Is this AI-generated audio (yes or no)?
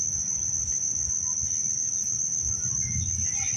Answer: no